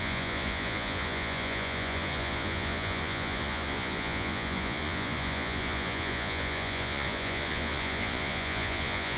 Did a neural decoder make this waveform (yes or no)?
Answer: yes